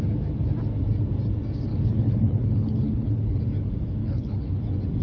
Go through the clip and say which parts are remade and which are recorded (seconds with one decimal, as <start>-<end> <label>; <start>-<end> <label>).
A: 0.0-1.7 recorded; 1.7-3.4 remade; 3.4-4.0 recorded; 4.0-4.6 remade; 4.6-5.0 recorded